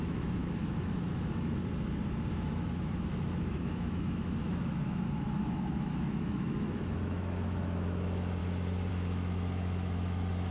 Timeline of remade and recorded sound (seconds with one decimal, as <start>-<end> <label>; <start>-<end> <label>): 0.0-1.6 remade; 1.6-2.3 recorded; 2.3-8.4 remade; 8.4-8.9 recorded; 8.9-10.5 remade